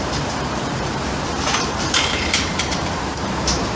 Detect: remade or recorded remade